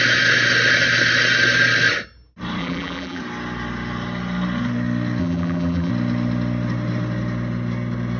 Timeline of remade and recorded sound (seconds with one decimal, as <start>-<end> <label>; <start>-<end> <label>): 0.0-2.6 recorded; 2.6-3.2 remade; 3.2-5.2 recorded; 5.2-5.9 remade; 5.9-8.2 recorded